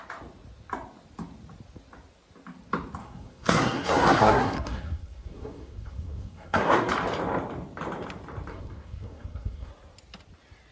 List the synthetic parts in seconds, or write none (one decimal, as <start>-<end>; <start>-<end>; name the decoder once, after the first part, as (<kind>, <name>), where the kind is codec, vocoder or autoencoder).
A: 3.0-6.9 (codec, SNAC); 8.5-9.7

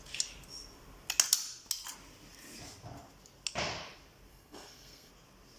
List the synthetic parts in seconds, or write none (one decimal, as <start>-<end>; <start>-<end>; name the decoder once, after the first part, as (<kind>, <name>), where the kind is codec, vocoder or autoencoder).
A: 4.3-5.1 (codec, SNAC)

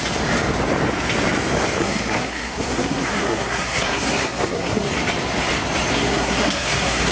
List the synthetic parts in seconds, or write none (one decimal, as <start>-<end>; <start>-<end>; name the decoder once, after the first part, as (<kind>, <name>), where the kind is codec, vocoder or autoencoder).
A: 1.8-4.9 (codec, SNAC); 5.9-7.1

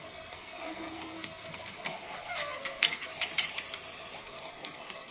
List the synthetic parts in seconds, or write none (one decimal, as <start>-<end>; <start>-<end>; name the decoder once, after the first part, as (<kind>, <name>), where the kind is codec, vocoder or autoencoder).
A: 0.0-3.1 (codec, SNAC); 4.2-5.1

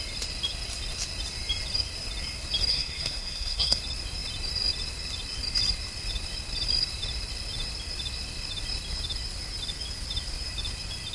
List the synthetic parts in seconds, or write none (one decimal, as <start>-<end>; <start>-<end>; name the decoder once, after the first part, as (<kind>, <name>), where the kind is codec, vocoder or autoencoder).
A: 2.7-3.8 (codec, SNAC)